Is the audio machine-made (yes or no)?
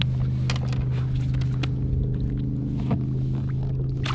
no